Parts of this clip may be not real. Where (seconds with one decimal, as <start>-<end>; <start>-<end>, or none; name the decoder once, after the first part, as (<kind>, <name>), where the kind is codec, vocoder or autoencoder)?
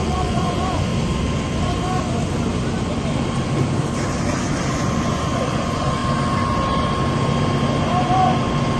0.0-0.9 (vocoder, Vocos); 4.7-6.0